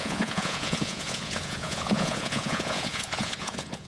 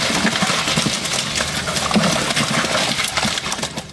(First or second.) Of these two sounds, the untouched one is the second